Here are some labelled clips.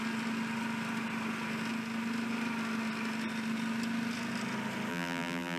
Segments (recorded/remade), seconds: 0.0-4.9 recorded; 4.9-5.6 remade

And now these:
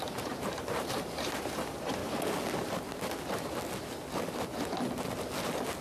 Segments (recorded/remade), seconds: 0.0-2.0 remade; 2.0-5.8 recorded

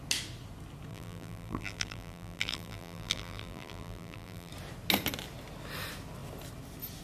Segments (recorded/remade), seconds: 0.0-0.9 recorded; 0.9-4.5 remade; 4.5-7.0 recorded

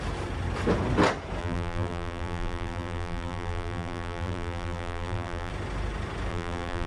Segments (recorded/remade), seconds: 0.0-1.4 recorded; 1.4-5.5 remade; 5.5-6.3 recorded; 6.3-6.9 remade

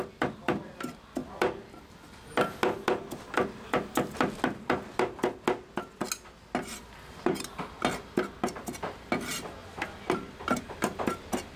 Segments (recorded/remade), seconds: 0.0-9.6 recorded; 9.6-10.7 remade; 10.7-11.6 recorded

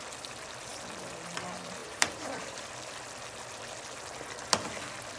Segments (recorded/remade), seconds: 0.0-1.8 recorded; 1.8-2.7 remade; 2.7-5.2 recorded